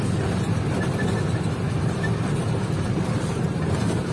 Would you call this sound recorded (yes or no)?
yes